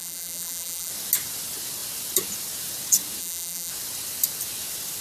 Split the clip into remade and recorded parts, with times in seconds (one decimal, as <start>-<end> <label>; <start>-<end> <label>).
0.0-0.9 remade; 0.9-3.2 recorded; 3.2-3.7 remade; 3.7-5.0 recorded